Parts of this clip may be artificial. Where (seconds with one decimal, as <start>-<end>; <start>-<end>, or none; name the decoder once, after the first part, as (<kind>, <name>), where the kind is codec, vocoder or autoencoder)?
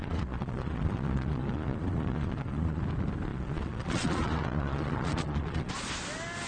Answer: 0.0-2.8 (vocoder, Vocos); 3.3-5.7